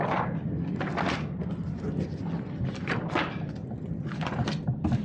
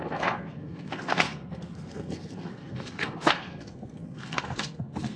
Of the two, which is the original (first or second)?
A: first